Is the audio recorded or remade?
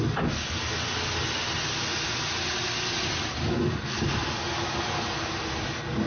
recorded